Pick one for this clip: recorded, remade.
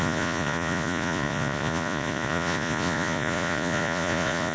remade